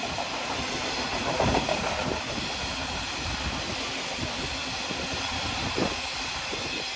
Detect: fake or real real